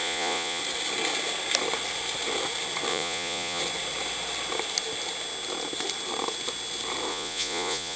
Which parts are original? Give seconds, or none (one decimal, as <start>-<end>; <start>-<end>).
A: 0.6-2.9; 3.6-7.1